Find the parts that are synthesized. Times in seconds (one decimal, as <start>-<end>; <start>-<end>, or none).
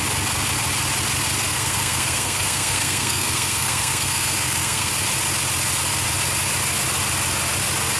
1.5-4.9